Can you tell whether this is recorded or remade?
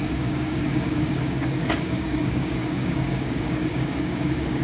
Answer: remade